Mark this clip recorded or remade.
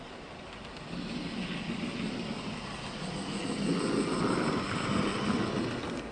recorded